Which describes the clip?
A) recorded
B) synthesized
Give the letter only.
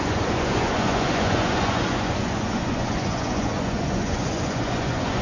B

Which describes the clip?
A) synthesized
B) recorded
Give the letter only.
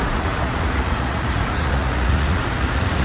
A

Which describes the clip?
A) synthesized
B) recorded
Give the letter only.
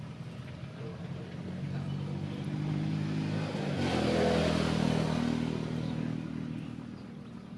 B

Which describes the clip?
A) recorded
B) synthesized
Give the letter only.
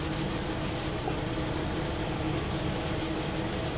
A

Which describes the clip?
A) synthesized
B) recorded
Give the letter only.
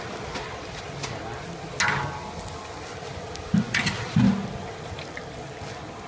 B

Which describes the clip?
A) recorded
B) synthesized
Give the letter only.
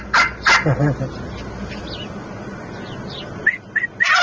A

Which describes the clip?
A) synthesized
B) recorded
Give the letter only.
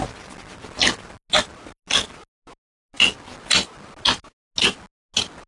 B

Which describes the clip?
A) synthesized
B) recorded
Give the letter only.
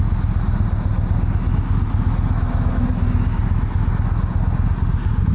B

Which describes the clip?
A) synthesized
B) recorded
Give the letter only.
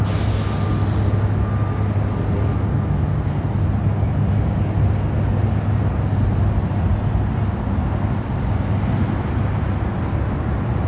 B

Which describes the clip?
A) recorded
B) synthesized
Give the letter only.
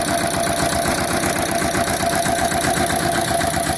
A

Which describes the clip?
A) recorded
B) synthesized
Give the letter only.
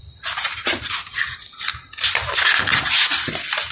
A